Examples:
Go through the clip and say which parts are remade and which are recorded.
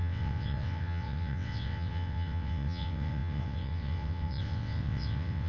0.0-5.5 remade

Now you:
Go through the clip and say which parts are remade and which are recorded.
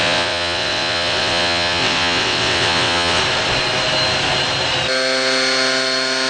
0.0-3.2 remade; 3.2-6.3 recorded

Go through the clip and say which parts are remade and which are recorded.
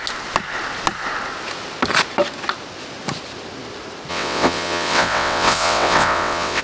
0.0-4.1 recorded; 4.1-6.6 remade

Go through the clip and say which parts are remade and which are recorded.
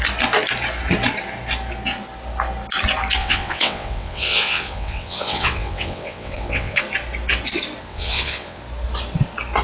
0.0-3.2 recorded; 3.2-6.8 remade; 6.8-7.8 recorded; 7.8-8.6 remade; 8.6-9.6 recorded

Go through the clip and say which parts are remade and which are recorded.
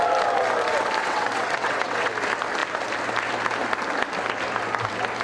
0.0-1.0 recorded; 1.0-2.1 remade; 2.1-5.2 recorded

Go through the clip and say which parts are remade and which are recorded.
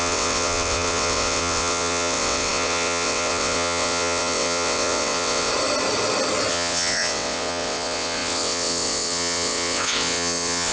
0.0-5.5 remade; 5.5-6.5 recorded; 6.5-10.7 remade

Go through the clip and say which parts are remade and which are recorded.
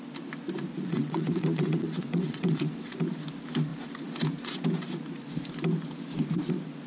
0.0-0.9 recorded; 0.9-3.0 remade; 3.0-6.9 recorded